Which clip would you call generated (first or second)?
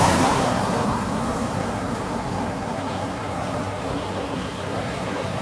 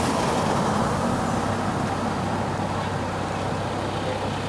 first